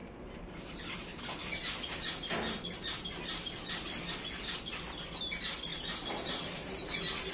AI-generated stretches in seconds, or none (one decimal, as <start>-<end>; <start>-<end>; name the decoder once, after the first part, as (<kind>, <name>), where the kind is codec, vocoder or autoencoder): 5.7-7.3 (vocoder, BigVGAN v2)